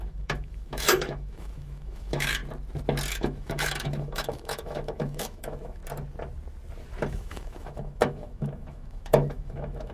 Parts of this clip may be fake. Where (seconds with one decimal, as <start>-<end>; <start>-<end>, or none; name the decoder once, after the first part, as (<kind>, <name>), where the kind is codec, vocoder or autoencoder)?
0.0-2.4 (autoencoder, DAC-VAE); 3.1-5.8; 7.1-9.9